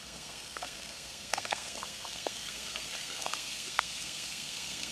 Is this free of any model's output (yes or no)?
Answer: no